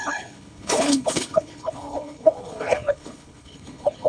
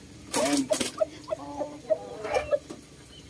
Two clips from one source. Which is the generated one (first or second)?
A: first